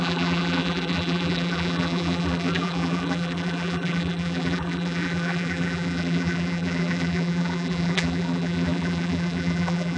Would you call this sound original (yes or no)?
no